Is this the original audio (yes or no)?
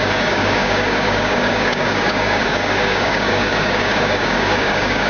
no